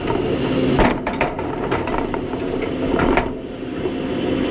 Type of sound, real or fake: real